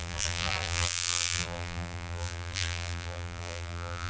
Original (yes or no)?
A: no